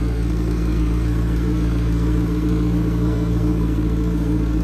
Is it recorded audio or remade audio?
remade